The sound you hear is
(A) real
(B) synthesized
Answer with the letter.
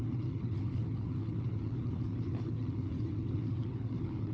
B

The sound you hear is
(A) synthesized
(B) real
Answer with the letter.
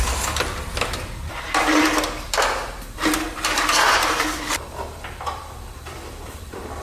A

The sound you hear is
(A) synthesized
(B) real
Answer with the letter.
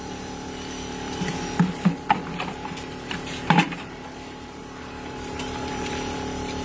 A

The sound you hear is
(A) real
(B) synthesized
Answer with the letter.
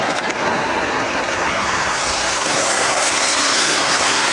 B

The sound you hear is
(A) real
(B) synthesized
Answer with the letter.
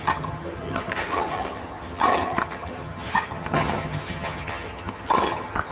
B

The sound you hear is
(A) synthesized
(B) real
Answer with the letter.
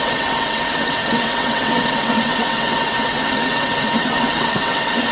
A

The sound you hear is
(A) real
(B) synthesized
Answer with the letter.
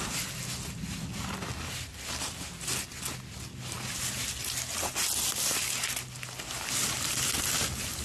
A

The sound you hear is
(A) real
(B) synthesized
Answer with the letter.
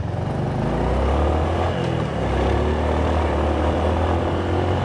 A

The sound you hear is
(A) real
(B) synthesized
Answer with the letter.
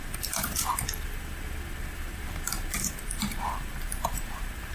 B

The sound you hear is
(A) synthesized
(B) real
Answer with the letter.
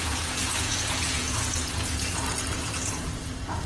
A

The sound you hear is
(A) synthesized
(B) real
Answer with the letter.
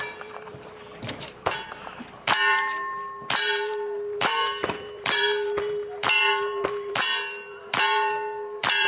A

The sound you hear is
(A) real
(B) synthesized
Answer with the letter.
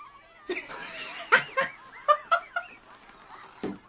A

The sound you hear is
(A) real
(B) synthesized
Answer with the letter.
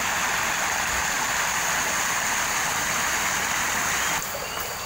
A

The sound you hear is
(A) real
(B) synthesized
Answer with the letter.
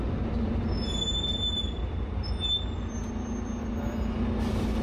A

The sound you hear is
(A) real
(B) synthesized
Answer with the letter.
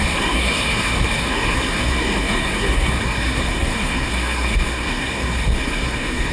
B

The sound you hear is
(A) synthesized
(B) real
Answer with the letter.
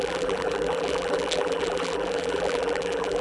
A